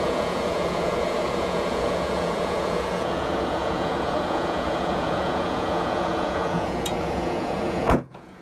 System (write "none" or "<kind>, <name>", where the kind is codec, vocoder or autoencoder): vocoder, Vocos